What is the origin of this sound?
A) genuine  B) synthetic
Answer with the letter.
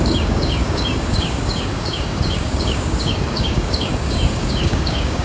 B